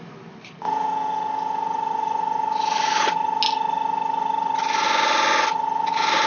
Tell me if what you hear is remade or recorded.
recorded